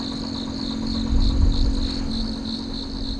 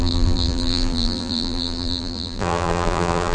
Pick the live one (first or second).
first